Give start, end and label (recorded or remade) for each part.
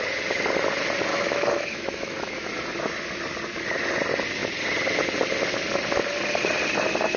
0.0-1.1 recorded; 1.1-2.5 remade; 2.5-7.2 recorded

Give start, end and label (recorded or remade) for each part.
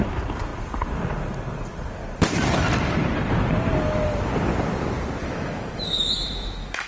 0.0-5.2 recorded; 5.2-6.9 remade